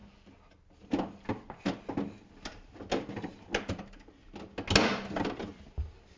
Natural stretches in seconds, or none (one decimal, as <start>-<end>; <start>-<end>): 0.0-6.2